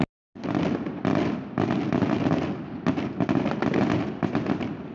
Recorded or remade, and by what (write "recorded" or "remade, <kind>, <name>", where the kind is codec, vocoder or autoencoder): recorded